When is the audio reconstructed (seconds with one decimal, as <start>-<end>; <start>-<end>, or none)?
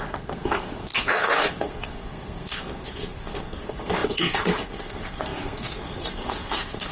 0.0-6.9